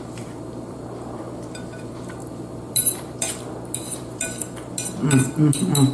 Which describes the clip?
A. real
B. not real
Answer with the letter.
B